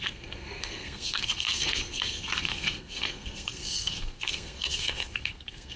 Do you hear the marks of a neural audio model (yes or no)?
yes